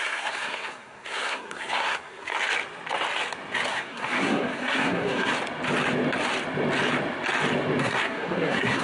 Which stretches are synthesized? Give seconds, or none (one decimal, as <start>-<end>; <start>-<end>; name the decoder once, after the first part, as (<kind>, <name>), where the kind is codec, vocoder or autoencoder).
0.0-2.3 (codec, SNAC); 3.7-5.3; 7.8-8.8